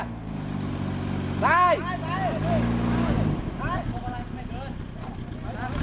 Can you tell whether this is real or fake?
real